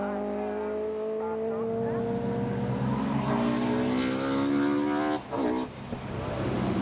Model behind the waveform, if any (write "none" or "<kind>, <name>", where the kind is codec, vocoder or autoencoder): none